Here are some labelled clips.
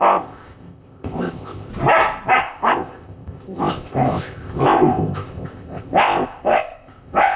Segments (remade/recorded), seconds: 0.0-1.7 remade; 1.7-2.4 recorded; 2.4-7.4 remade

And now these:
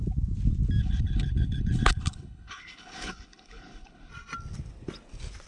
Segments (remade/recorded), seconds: 0.0-0.8 recorded; 0.8-4.1 remade; 4.1-5.5 recorded

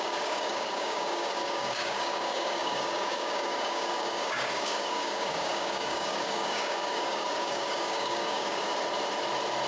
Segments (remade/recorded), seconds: 0.0-8.7 remade; 8.7-9.7 recorded

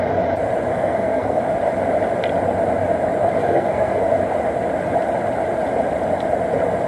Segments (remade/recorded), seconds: 0.0-0.7 recorded; 0.7-1.4 remade; 1.4-3.4 recorded; 3.4-4.1 remade; 4.1-6.9 recorded